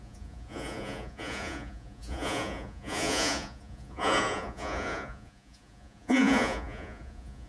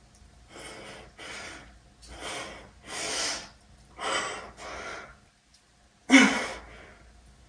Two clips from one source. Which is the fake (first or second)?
first